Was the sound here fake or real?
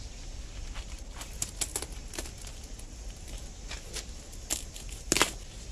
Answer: real